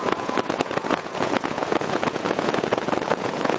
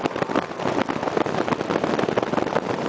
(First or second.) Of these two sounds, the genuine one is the second